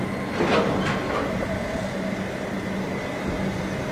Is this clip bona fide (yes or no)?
yes